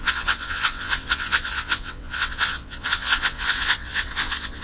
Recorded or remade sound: remade